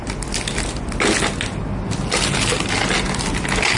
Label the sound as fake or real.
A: real